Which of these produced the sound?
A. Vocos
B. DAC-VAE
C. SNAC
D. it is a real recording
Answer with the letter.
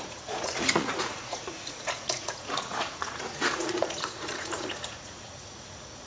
A